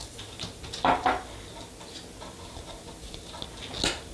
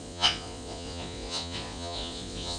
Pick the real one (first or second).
first